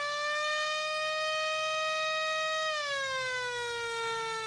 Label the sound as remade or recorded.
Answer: remade